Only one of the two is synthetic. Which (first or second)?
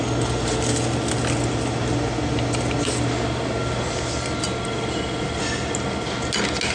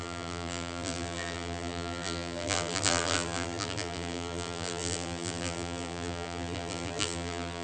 second